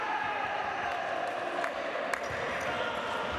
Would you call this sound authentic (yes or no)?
yes